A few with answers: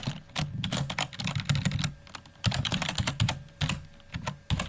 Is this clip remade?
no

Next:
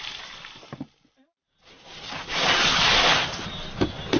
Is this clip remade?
no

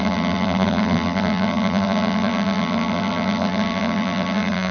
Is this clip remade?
yes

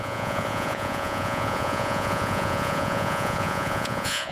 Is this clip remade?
yes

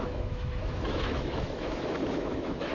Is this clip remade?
yes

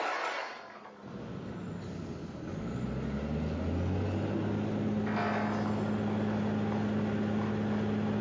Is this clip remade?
no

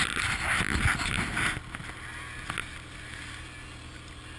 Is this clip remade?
no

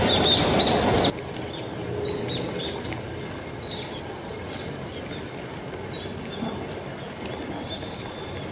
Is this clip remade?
no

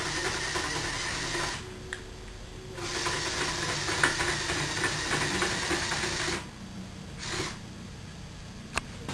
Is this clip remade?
no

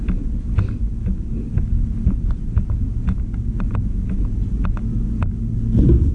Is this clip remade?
no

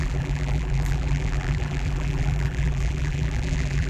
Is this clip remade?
yes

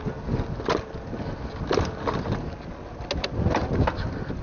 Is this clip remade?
no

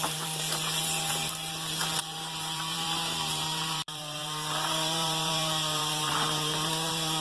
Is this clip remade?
yes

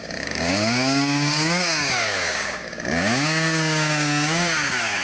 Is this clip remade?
yes